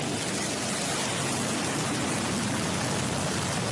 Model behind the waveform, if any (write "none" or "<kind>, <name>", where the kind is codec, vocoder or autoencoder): none